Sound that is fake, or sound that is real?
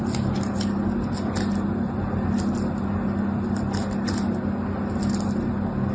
real